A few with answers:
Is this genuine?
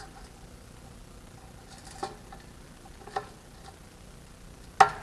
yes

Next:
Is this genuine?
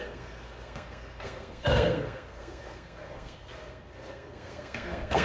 no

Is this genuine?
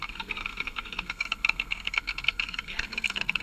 no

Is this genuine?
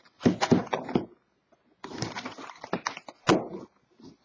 yes